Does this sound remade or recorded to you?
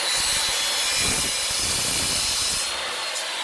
recorded